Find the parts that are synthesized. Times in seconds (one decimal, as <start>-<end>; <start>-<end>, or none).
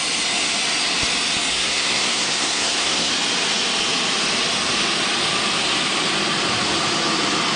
1.5-3.1